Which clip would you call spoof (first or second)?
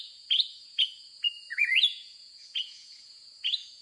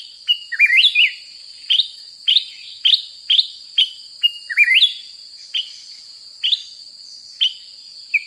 first